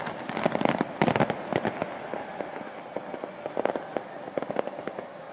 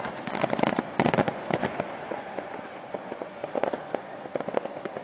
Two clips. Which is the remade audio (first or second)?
second